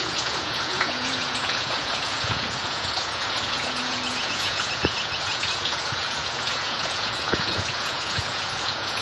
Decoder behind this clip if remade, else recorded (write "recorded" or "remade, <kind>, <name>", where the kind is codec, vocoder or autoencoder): remade, vocoder, Vocos